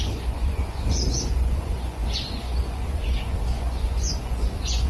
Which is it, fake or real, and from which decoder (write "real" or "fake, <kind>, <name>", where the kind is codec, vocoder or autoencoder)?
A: fake, vocoder, Vocos